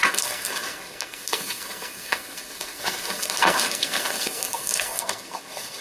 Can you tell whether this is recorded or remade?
remade